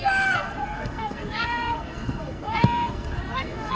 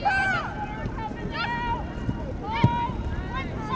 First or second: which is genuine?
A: second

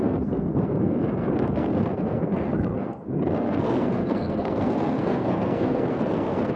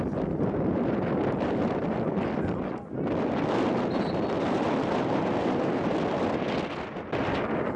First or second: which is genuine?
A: second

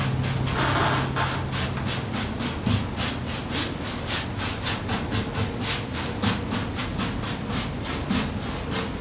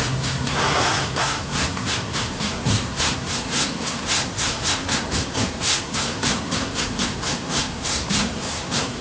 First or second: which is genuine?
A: first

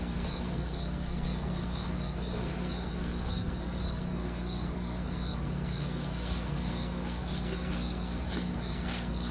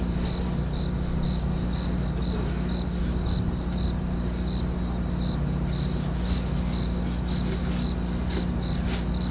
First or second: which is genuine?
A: second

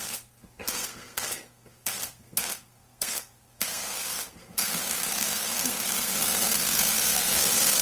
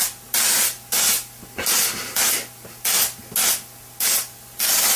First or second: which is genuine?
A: second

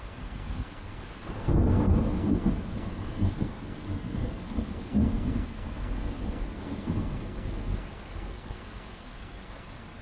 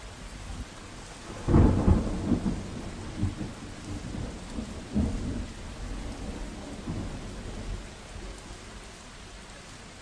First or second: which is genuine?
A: second